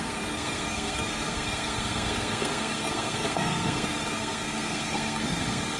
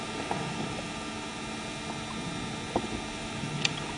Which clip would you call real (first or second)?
second